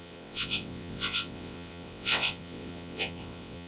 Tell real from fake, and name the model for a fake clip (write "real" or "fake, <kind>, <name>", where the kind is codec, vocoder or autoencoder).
fake, vocoder, WaveNeXt